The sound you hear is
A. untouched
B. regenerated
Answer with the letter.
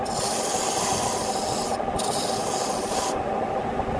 A